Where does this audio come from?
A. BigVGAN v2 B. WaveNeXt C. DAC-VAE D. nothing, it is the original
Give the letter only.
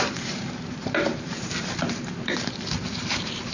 A